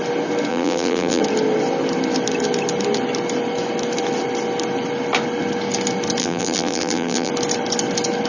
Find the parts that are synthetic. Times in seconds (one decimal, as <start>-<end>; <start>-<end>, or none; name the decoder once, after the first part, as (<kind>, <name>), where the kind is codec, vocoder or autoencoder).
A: 0.5-1.2 (vocoder, BigVGAN v2); 6.2-7.3